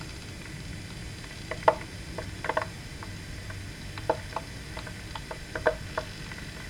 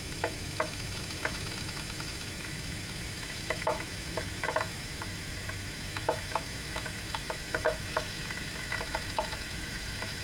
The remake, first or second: second